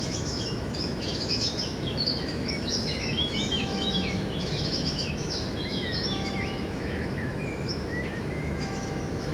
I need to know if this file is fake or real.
fake